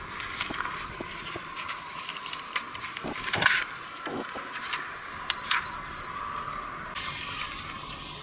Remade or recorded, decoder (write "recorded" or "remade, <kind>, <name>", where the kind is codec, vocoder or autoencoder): recorded